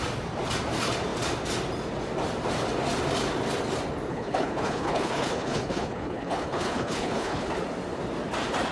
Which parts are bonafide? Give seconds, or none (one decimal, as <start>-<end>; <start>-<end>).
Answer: 0.0-4.1; 7.5-8.7